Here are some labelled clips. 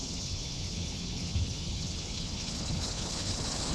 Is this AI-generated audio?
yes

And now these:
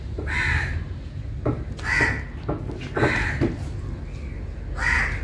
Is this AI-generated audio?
no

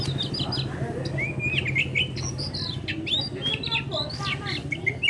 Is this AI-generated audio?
no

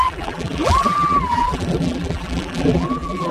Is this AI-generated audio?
yes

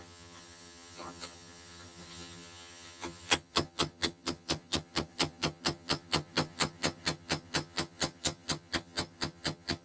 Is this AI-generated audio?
yes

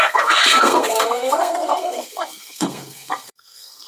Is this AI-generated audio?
yes